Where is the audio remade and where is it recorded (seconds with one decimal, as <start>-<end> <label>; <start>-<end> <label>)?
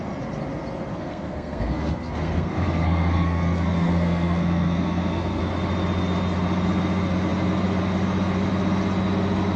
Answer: 0.0-0.9 recorded; 0.9-5.4 remade; 5.4-9.6 recorded